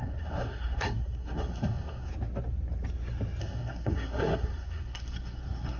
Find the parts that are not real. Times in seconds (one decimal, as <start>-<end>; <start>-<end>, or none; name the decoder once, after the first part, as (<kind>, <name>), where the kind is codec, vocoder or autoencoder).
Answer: 0.0-2.1 (codec, SNAC); 3.4-5.8